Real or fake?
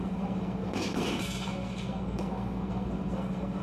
fake